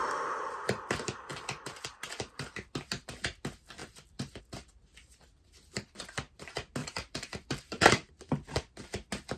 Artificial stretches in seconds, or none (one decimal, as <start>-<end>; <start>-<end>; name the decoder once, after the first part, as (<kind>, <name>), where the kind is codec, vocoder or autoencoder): 3.8-4.4 (vocoder, BigVGAN v2); 6.8-8.1